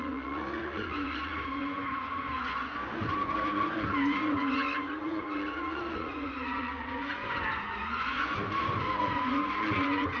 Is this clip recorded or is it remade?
remade